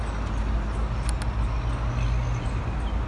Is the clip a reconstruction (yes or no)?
no